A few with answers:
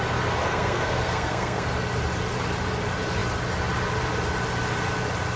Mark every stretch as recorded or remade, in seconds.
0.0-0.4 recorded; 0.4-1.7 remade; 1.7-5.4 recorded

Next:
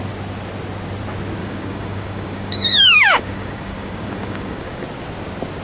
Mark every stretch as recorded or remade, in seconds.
0.0-1.4 recorded; 1.4-4.8 remade; 4.8-5.6 recorded

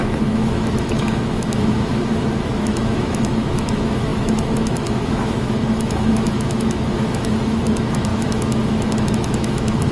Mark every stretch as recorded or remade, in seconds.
0.0-9.9 remade

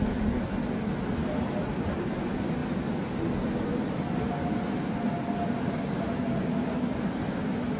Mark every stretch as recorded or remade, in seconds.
0.0-7.8 recorded

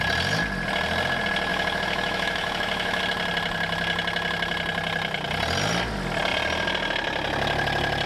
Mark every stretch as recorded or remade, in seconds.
0.0-1.5 recorded; 1.5-3.0 remade; 3.0-8.1 recorded